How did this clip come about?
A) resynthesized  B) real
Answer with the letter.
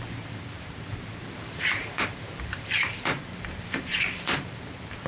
A